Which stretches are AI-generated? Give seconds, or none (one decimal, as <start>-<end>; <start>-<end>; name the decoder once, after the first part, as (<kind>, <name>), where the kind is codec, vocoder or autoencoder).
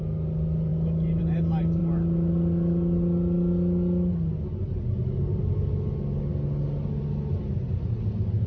none